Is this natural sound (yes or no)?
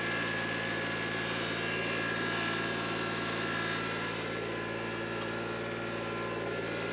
yes